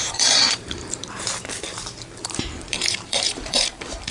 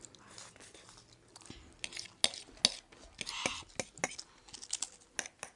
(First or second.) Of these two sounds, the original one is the second